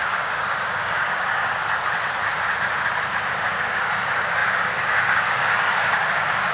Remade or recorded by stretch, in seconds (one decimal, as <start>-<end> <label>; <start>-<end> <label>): 0.0-1.6 remade; 1.6-3.4 recorded; 3.4-6.5 remade